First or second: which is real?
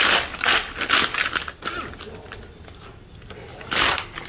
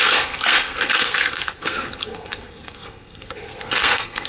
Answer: first